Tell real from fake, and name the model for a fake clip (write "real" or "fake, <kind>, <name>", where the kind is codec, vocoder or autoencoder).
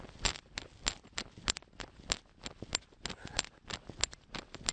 real